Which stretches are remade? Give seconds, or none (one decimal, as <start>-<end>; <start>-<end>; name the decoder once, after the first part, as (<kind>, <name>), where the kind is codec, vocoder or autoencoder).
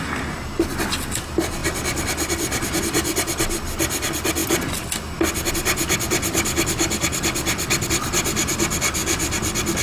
none